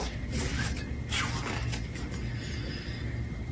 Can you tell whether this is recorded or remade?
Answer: recorded